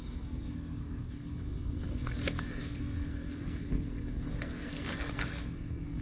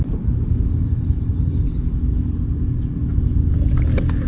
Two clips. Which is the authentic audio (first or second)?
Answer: second